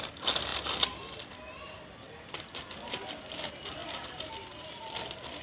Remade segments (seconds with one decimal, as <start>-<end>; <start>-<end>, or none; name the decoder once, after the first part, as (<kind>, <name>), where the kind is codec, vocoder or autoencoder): 0.0-3.8 (vocoder, BigVGAN v2); 4.7-5.4